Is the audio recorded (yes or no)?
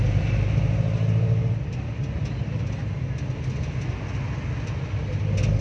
yes